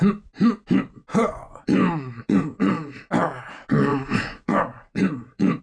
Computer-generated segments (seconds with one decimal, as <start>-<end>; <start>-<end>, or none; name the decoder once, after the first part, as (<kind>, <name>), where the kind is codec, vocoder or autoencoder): 1.2-2.7 (vocoder, Vocos); 3.9-5.6